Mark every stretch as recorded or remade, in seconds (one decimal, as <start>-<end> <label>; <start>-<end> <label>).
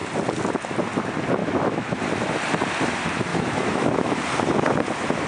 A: 0.0-1.4 recorded; 1.4-2.0 remade; 2.0-3.3 recorded; 3.3-4.2 remade; 4.2-5.3 recorded